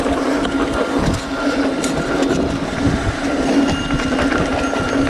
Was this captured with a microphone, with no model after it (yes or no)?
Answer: yes